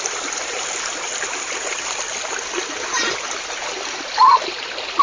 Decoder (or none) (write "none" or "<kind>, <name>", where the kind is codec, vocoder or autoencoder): none